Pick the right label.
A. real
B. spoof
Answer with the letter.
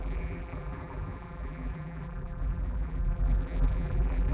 B